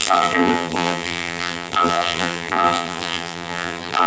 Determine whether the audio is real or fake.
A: fake